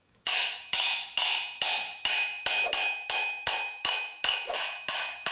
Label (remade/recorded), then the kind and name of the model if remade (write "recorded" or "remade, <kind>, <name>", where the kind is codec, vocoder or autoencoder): remade, autoencoder, DAC-VAE